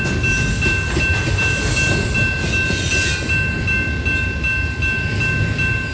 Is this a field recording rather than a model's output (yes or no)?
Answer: yes